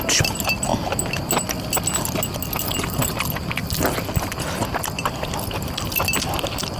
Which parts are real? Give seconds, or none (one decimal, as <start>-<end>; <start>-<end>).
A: 0.0-6.8